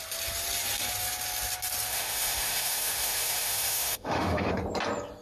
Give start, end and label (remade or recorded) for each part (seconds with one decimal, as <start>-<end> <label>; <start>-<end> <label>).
0.0-1.9 recorded; 1.9-4.5 remade; 4.5-5.2 recorded